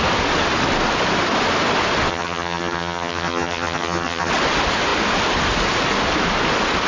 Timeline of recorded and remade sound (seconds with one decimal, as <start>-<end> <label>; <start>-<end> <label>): 0.0-2.1 recorded; 2.1-4.3 remade; 4.3-6.9 recorded